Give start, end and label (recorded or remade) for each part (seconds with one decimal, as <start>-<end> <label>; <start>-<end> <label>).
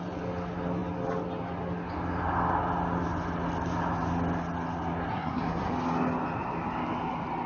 0.0-5.1 recorded; 5.1-5.7 remade; 5.7-7.5 recorded